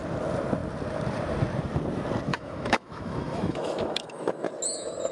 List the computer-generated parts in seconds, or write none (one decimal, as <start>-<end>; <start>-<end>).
2.3-4.5